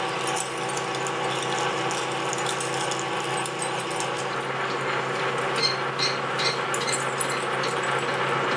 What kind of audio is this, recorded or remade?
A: recorded